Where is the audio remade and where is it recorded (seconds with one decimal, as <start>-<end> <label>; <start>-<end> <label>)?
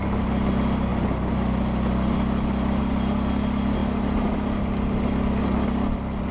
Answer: 0.0-6.3 recorded